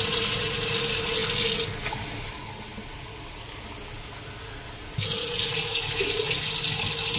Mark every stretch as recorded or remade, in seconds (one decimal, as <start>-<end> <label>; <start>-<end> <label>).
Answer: 0.0-7.2 recorded